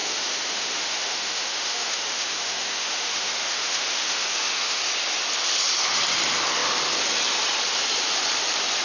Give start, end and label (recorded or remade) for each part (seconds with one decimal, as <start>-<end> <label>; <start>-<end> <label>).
0.0-4.8 remade; 4.8-8.8 recorded